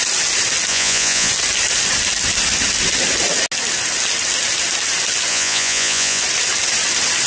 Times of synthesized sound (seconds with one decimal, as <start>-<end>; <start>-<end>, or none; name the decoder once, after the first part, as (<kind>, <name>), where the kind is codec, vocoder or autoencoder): 0.7-1.3 (vocoder, Vocos); 5.3-6.2